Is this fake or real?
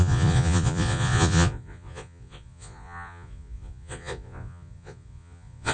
fake